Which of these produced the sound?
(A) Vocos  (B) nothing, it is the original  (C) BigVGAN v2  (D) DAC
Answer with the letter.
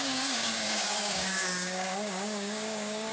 D